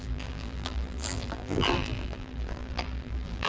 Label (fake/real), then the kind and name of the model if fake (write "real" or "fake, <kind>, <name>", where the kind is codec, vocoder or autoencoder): fake, vocoder, BigVGAN v2